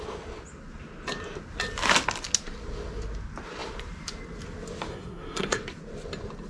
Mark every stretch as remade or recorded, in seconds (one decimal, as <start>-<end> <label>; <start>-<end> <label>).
0.0-4.9 recorded; 4.9-5.6 remade; 5.6-6.5 recorded

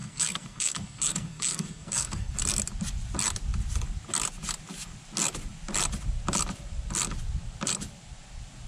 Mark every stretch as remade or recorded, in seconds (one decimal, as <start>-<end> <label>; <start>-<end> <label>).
0.0-2.3 remade; 2.3-8.7 recorded

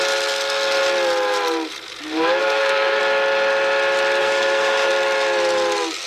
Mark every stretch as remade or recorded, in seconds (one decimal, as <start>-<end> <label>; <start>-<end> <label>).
0.0-2.4 recorded; 2.4-3.0 remade; 3.0-4.2 recorded; 4.2-4.9 remade; 4.9-6.1 recorded

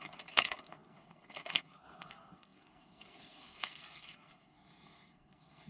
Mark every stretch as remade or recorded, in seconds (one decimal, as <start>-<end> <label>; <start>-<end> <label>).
0.0-5.7 remade

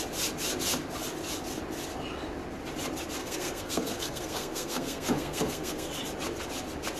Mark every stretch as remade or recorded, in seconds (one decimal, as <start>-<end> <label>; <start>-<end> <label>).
0.0-3.2 recorded; 3.2-5.9 remade; 5.9-7.0 recorded

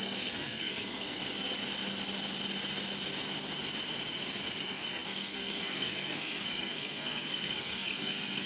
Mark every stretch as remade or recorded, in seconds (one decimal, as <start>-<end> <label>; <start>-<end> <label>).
0.0-1.2 remade; 1.2-4.6 recorded; 4.6-8.5 remade